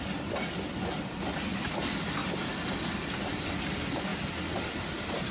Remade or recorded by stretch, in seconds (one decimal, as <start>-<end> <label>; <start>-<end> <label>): 0.0-5.3 recorded